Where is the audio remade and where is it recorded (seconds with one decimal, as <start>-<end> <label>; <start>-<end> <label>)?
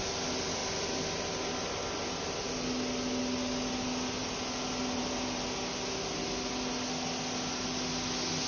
0.0-8.5 recorded